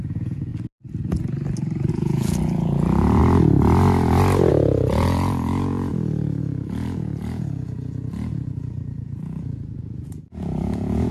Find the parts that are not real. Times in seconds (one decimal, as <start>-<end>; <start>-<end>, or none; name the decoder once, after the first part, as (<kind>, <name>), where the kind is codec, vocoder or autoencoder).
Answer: 0.0-0.5 (vocoder, Vocos); 1.9-3.2; 4.5-5.9; 6.4-11.1

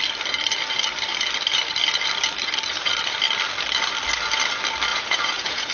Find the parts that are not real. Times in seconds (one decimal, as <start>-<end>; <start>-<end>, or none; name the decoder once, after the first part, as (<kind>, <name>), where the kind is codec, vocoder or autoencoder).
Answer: 4.9-5.7 (vocoder, Vocos)

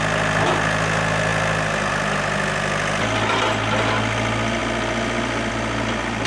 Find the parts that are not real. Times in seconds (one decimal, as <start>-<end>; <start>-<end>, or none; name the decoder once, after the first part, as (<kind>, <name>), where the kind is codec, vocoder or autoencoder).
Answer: none

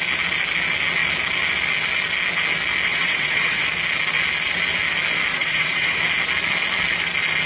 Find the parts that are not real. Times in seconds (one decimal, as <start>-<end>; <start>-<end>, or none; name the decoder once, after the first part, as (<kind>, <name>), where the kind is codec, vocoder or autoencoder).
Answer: 2.9-3.6 (vocoder, WaveNeXt); 5.3-6.0